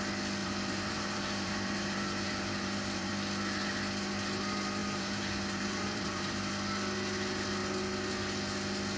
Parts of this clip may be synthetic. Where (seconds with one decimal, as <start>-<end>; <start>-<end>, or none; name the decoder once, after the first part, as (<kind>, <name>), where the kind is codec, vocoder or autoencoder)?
0.4-3.1 (vocoder, BigVGAN v2); 4.8-6.5